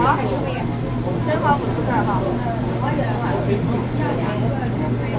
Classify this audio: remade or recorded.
recorded